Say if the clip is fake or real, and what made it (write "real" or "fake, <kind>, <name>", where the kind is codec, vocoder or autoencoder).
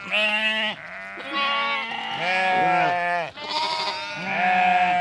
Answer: real